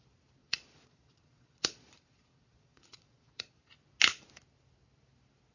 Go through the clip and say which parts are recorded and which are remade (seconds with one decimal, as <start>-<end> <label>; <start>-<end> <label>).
0.0-0.4 recorded; 0.4-3.7 remade; 3.7-5.5 recorded